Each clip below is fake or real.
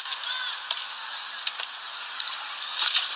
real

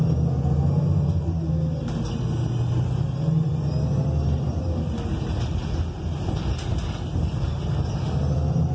real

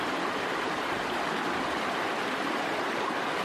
fake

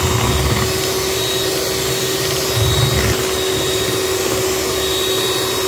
real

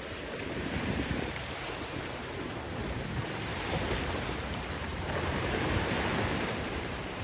fake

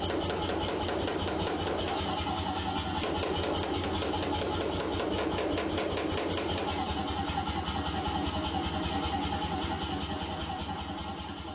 real